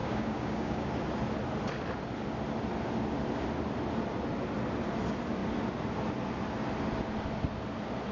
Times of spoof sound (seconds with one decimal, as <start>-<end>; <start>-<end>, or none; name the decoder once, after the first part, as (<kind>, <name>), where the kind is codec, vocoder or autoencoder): 0.0-0.9 (codec, DAC)